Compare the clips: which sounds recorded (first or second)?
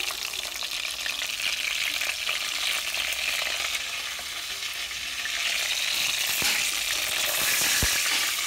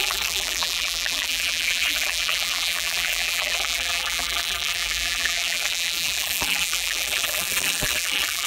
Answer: first